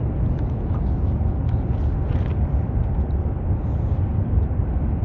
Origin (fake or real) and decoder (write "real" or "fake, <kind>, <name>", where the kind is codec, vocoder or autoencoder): real